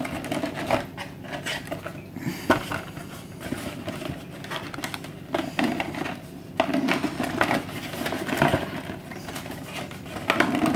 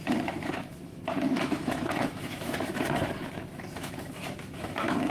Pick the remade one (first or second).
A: second